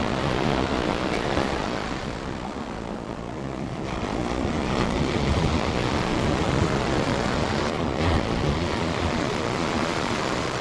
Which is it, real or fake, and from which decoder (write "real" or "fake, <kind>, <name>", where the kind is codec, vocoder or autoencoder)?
fake, vocoder, Vocos